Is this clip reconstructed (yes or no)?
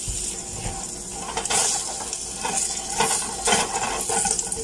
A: no